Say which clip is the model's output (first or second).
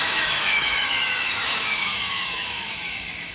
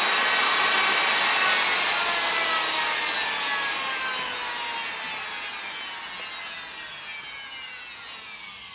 first